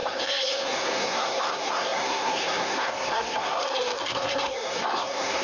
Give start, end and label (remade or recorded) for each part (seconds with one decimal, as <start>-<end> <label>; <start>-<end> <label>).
0.0-5.4 remade

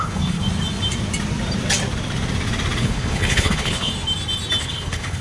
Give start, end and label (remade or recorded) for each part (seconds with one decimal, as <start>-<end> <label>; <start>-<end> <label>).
0.0-0.4 remade; 0.4-2.8 recorded; 2.8-3.9 remade; 3.9-4.6 recorded; 4.6-5.2 remade